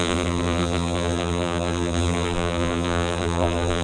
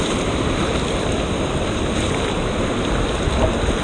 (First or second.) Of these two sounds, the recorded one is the second